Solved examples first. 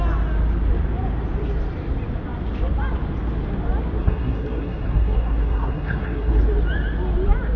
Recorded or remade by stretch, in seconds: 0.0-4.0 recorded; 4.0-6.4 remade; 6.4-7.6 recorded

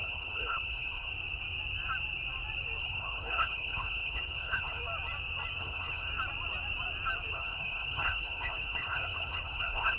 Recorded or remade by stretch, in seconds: 0.0-1.1 remade; 1.1-2.8 recorded; 2.8-4.8 remade; 4.8-5.6 recorded; 5.6-6.1 remade; 6.1-7.3 recorded; 7.3-10.0 remade